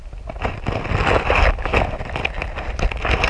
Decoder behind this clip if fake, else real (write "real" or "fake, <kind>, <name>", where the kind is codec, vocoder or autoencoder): real